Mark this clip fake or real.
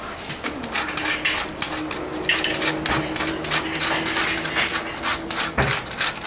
real